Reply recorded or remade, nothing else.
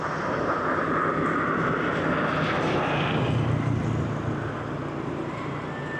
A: recorded